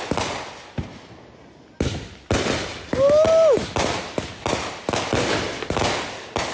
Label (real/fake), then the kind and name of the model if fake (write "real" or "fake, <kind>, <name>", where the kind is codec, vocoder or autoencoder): real